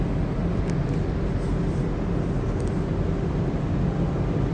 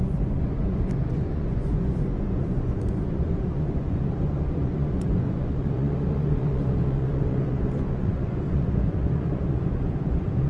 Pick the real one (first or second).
first